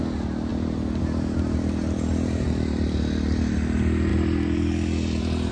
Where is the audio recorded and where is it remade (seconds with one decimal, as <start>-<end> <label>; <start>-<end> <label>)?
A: 0.0-0.5 recorded; 0.5-1.0 remade; 1.0-4.1 recorded; 4.1-5.5 remade